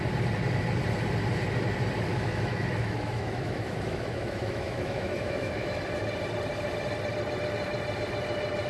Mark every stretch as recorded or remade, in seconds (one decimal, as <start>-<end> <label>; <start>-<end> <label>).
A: 0.0-2.1 recorded; 2.1-5.8 remade; 5.8-8.7 recorded